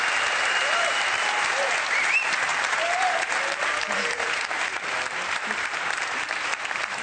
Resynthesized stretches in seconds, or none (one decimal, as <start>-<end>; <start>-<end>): 0.0-7.0